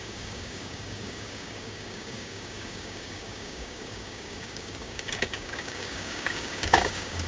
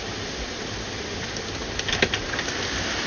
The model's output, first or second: first